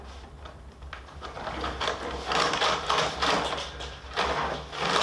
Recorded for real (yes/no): yes